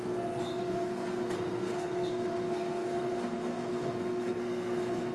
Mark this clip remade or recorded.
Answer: remade